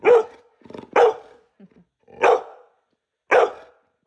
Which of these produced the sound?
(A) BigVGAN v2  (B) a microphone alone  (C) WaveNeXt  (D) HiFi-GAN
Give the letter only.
B